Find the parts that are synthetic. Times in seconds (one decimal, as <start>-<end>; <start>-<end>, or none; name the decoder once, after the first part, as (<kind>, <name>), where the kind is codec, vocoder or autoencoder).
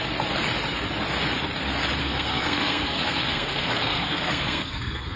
2.0-5.2 (codec, SNAC)